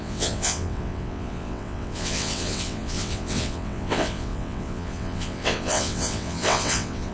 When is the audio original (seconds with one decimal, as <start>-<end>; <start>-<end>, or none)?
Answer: none